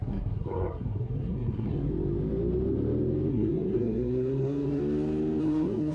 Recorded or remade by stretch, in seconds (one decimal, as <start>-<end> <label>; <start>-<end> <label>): 0.0-1.9 remade; 1.9-3.3 recorded; 3.3-4.8 remade; 4.8-5.4 recorded; 5.4-5.9 remade